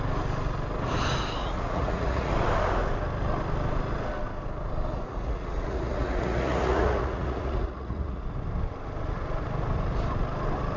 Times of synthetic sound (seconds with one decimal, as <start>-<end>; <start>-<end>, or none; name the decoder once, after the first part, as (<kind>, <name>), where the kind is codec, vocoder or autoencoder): 1.4-2.3 (vocoder, Vocos); 4.9-8.2

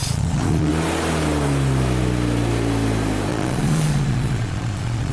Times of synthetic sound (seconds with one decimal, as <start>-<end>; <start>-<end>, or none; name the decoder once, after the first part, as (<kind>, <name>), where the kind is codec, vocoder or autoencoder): 0.0-0.7 (vocoder, Vocos); 3.3-5.1

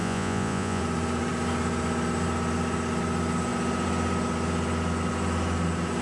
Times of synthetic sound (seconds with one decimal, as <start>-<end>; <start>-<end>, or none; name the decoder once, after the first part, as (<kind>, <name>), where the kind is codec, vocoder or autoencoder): 0.0-0.8 (vocoder, Vocos)